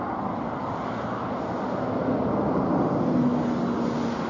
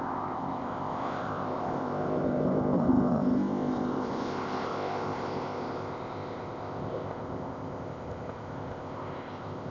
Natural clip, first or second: first